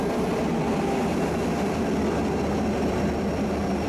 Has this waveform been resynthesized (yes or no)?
yes